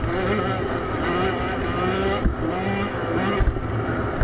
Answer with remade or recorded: recorded